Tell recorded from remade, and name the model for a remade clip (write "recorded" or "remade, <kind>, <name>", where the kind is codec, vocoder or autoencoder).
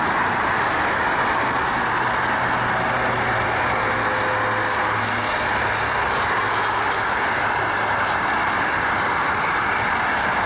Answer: recorded